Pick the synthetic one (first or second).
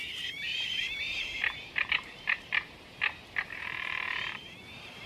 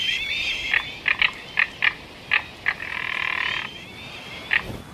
first